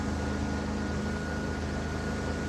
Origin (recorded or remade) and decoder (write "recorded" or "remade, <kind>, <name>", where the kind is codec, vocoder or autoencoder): recorded